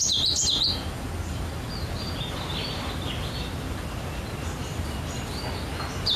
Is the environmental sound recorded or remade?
recorded